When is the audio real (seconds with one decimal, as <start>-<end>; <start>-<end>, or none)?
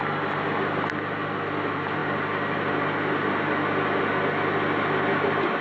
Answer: 0.0-5.6